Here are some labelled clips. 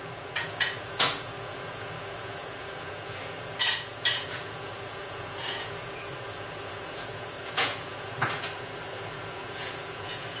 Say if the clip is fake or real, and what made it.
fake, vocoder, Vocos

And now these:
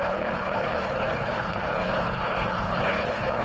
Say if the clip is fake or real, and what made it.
fake, codec, HILCodec